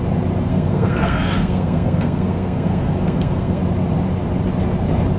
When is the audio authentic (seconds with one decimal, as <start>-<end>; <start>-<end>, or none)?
0.0-0.5; 3.6-5.2